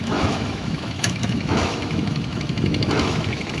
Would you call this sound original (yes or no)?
no